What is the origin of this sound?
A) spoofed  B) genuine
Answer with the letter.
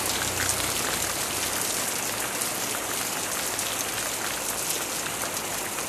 B